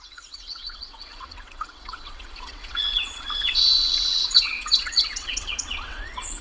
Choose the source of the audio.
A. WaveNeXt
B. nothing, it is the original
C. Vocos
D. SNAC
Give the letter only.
A